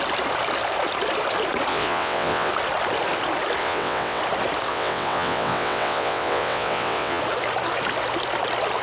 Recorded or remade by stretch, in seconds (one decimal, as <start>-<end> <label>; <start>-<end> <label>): 0.0-1.7 recorded; 1.7-2.5 remade; 2.5-3.6 recorded; 3.6-4.2 remade; 4.2-4.7 recorded; 4.7-7.2 remade; 7.2-8.8 recorded